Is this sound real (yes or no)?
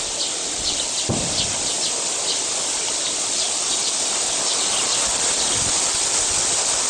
yes